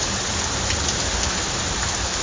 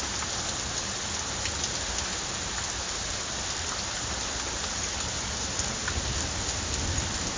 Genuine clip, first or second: second